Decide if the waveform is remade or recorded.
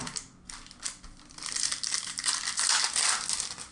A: recorded